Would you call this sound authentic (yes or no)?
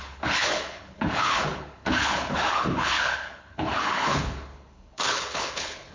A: no